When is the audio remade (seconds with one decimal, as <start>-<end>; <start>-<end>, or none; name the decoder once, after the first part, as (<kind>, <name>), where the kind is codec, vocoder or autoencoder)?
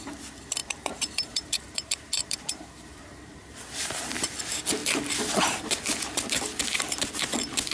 0.6-4.0 (vocoder, BigVGAN v2)